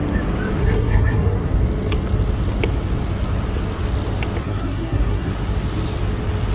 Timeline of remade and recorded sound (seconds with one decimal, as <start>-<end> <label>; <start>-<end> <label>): 0.0-0.6 recorded; 0.6-1.5 remade; 1.5-4.4 recorded; 4.4-5.3 remade; 5.3-6.5 recorded